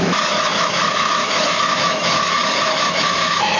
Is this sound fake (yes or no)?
yes